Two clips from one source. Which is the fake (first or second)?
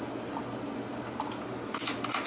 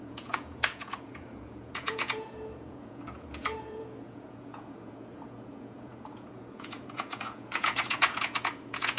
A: second